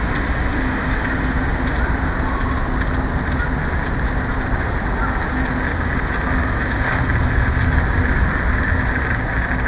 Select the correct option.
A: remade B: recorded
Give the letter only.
B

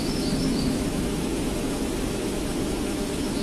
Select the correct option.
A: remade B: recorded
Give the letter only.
A